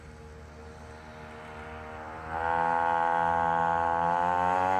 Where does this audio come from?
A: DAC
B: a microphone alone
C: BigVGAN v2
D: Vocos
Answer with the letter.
B